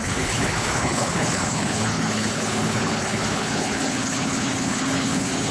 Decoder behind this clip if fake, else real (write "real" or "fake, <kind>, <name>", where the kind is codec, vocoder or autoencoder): fake, codec, HILCodec